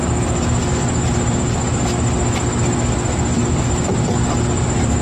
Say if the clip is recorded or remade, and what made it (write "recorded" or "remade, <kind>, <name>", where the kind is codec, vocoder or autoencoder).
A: recorded